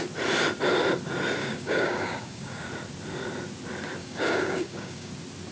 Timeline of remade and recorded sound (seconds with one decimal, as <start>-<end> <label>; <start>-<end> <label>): 0.0-1.4 recorded; 1.4-2.7 remade; 2.7-4.0 recorded; 4.0-5.1 remade; 5.1-5.5 recorded